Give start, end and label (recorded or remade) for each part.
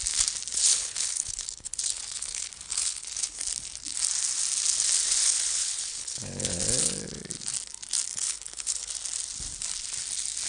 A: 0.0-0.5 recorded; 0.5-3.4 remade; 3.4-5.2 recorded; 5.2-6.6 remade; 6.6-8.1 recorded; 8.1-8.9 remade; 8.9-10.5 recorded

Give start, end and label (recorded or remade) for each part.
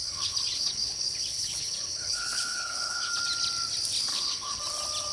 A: 0.0-3.1 remade; 3.1-4.1 recorded; 4.1-4.6 remade; 4.6-5.1 recorded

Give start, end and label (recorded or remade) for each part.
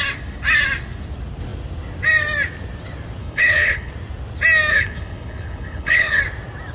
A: 0.0-3.2 recorded; 3.2-3.9 remade; 3.9-4.7 recorded; 4.7-6.2 remade; 6.2-6.7 recorded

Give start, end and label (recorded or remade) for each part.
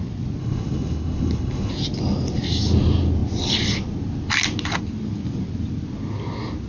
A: 0.0-0.4 recorded; 0.4-1.7 remade; 1.7-6.7 recorded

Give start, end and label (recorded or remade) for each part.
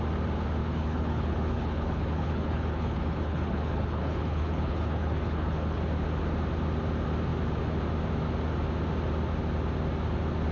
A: 0.0-0.6 recorded; 0.6-5.8 remade; 5.8-10.5 recorded